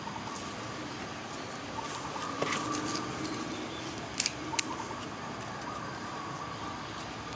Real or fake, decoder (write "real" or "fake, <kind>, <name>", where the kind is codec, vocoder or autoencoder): real